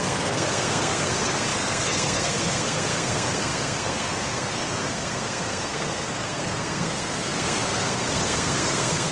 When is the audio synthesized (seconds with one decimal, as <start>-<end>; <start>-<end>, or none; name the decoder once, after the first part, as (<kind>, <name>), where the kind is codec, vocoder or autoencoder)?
0.0-9.1 (codec, SNAC)